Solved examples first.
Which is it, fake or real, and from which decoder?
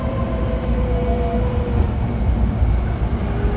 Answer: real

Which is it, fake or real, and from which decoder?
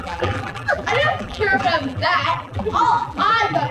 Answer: fake, vocoder, BigVGAN v2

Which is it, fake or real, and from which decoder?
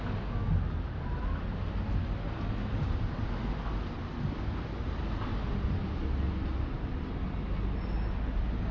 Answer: real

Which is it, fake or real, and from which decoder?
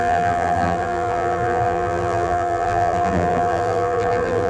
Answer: fake, vocoder, BigVGAN v2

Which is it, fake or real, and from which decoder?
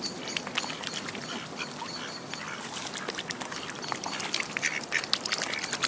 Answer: real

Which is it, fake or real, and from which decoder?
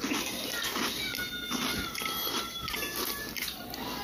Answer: real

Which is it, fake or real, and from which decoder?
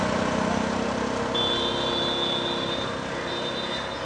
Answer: real